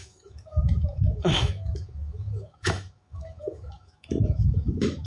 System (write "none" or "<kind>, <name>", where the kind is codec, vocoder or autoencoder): autoencoder, DAC-VAE